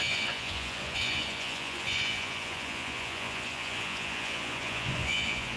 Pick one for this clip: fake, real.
fake